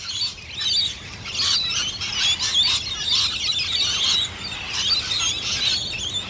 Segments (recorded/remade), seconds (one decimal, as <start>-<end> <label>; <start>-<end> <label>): 0.0-6.3 recorded